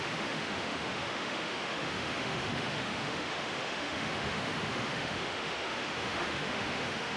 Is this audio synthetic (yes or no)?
yes